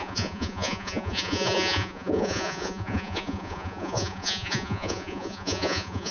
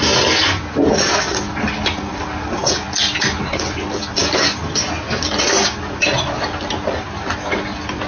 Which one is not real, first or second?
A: first